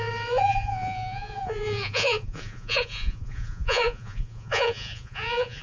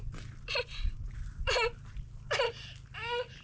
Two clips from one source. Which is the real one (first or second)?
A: second